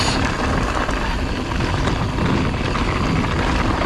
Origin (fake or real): real